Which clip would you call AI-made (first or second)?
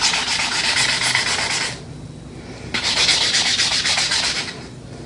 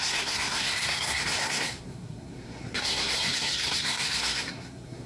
second